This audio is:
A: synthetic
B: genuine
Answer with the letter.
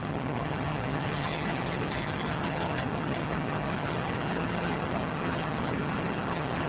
A